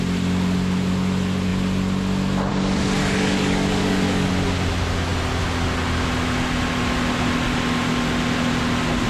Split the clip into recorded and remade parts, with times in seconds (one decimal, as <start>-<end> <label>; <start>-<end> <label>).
0.0-3.0 recorded; 3.0-4.3 remade; 4.3-9.1 recorded